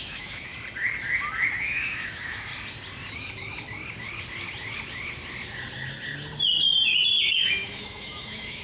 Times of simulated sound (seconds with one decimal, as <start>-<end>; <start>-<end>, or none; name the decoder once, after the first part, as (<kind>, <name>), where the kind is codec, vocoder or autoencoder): 0.0-0.5 (autoencoder, DAC-VAE); 1.6-2.5; 7.3-8.6